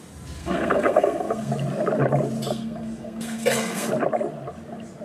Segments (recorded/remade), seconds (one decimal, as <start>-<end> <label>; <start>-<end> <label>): 0.0-0.4 recorded; 0.4-1.5 remade; 1.5-2.5 recorded; 2.5-3.9 remade; 3.9-5.0 recorded